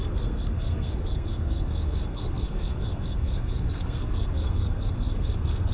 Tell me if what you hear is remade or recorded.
remade